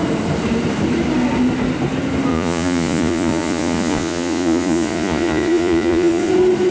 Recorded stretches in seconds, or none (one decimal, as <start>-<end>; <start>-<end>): 0.0-2.3; 6.3-6.7